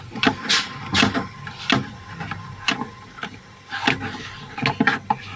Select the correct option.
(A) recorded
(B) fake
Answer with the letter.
A